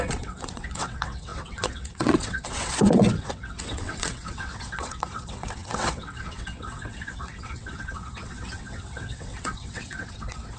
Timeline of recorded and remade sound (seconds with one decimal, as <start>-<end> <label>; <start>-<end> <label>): 0.0-10.6 remade